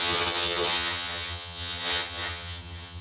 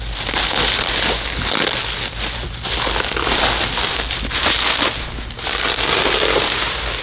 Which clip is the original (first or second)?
second